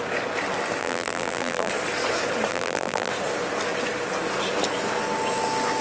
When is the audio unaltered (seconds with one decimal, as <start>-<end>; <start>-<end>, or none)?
0.0-0.8; 1.7-2.5; 3.1-5.8